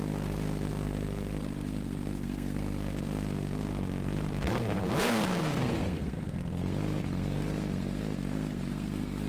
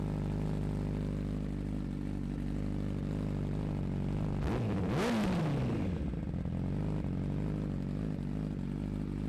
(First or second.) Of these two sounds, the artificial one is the first